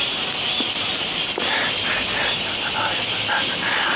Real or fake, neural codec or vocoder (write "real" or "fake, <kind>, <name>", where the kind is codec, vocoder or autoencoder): real